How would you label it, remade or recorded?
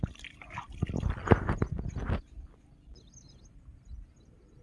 recorded